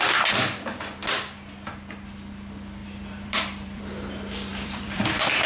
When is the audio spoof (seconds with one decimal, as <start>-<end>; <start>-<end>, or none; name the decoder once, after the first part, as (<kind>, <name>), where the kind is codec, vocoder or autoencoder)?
2.8-3.8 (vocoder, BigVGAN v2); 4.5-5.0